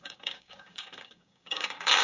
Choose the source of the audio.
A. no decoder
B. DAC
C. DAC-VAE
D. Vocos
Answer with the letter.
B